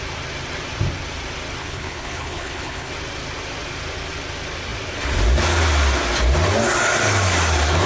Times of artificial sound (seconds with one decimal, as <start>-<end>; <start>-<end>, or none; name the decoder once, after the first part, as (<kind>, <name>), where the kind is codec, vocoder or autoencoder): 1.6-2.9 (codec, HILCodec)